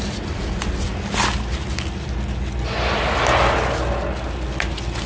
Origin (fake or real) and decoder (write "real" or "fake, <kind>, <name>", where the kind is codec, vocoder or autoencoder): real